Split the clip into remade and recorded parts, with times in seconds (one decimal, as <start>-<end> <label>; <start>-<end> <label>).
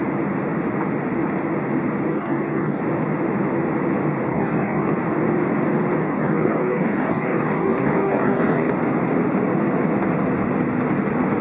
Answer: 0.0-2.1 recorded; 2.1-2.8 remade; 2.8-4.3 recorded; 4.3-4.9 remade; 4.9-6.0 recorded; 6.0-8.7 remade; 8.7-11.4 recorded